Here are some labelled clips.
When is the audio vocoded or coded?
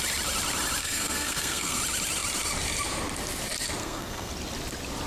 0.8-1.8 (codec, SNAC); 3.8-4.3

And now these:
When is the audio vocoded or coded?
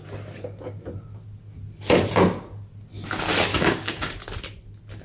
3.5-4.1 (codec, DAC)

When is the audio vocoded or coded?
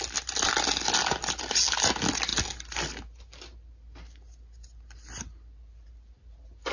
none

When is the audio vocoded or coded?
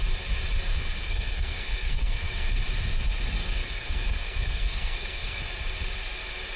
0.7-2.6 (codec, SNAC); 3.4-5.4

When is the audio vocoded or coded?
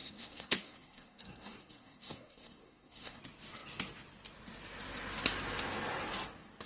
0.0-3.2 (codec, SNAC)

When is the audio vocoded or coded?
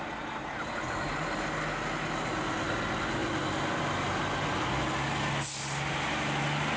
none